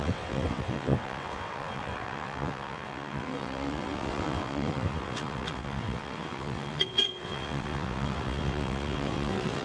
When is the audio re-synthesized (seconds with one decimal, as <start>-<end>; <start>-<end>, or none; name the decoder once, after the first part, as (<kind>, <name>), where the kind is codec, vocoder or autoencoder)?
0.0-9.6 (vocoder, WaveNeXt)